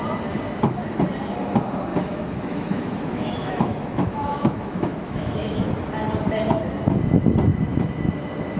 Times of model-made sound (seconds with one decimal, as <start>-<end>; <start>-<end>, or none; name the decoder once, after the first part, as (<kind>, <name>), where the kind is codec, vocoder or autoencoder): 1.9-5.7 (autoencoder, DAC-VAE)